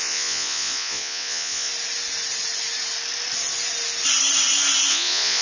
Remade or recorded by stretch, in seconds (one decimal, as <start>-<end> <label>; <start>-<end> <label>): 0.0-1.7 remade; 1.7-4.9 recorded; 4.9-5.4 remade